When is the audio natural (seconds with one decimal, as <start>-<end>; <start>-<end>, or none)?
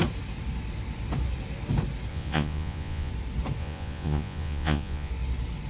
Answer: 0.0-2.1; 3.1-3.6; 5.1-5.7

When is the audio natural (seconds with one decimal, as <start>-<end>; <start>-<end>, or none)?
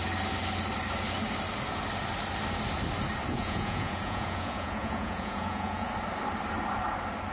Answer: 0.0-3.3; 5.9-7.3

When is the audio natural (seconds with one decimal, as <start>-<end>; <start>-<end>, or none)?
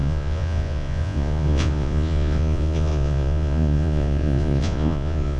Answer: none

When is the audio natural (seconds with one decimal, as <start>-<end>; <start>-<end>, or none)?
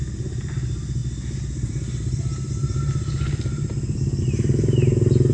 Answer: 0.0-5.3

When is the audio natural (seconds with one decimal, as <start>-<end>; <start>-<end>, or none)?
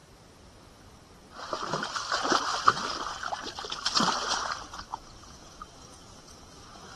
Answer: 0.0-4.9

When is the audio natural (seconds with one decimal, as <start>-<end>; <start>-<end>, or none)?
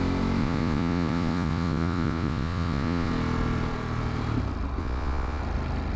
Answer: 0.0-0.4; 3.1-4.8; 5.4-6.0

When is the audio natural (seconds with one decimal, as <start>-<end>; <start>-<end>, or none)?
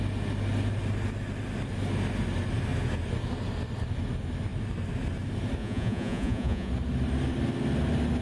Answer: 0.0-5.6; 6.7-8.2